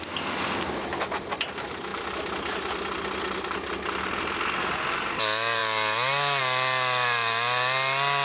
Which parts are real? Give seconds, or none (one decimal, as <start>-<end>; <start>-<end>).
0.0-8.2